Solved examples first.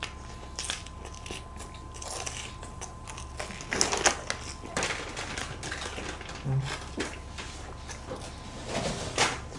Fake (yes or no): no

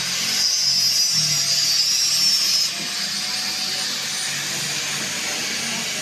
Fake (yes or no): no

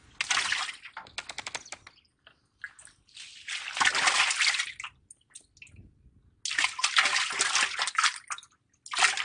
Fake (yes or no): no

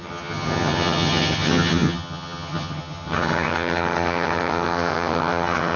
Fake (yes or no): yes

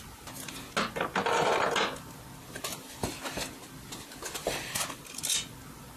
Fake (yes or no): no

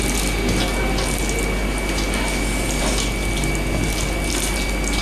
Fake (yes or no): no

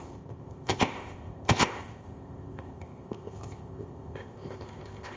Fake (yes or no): yes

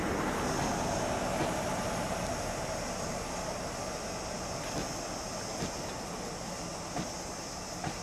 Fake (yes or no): no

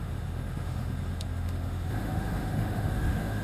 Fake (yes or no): yes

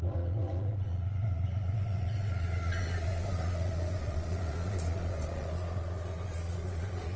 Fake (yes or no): yes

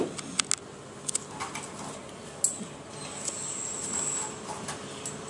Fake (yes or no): no